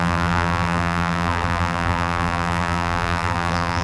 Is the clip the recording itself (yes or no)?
no